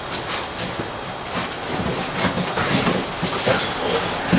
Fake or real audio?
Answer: real